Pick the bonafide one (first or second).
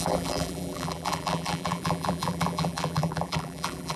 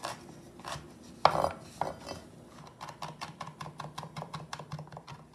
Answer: second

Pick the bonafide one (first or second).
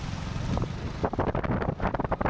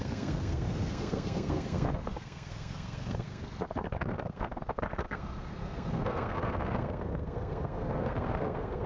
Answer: first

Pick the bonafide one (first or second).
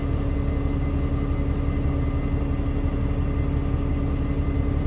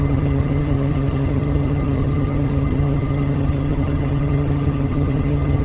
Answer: first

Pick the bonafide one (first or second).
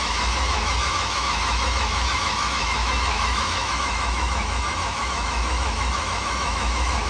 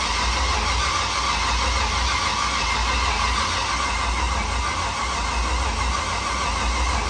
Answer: second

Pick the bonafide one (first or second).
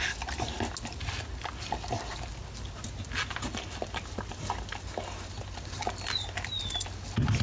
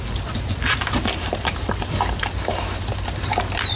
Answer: first